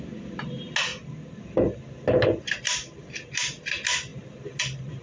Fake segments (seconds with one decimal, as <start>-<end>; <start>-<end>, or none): none